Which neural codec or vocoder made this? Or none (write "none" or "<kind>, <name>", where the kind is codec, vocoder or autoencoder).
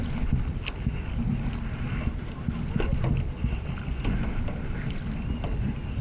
none